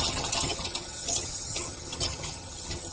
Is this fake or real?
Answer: fake